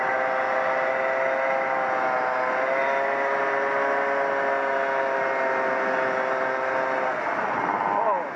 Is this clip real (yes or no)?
yes